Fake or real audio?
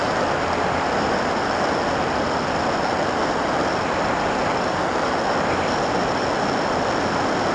real